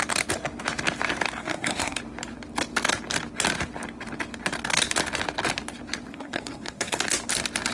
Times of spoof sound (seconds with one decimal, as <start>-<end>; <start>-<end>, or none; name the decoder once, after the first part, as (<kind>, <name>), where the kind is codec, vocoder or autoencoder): 1.4-2.0 (codec, SNAC); 6.1-7.0